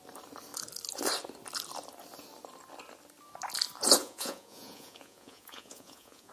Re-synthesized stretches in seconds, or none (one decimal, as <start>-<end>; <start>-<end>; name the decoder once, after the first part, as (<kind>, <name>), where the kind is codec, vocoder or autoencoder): 4.0-6.3 (vocoder, Vocos)